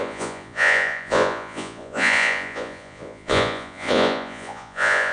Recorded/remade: remade